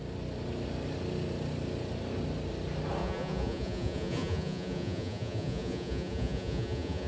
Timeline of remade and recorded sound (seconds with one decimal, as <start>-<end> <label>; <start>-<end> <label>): 0.0-3.0 recorded; 3.0-7.1 remade